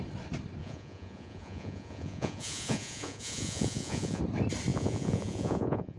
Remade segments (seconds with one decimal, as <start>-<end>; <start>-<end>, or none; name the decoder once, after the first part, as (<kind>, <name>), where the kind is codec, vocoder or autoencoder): 0.6-4.2 (vocoder, Vocos); 4.7-6.0